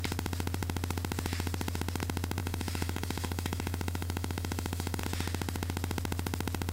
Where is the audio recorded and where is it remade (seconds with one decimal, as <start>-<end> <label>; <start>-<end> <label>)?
0.0-2.4 recorded; 2.4-5.0 remade; 5.0-6.7 recorded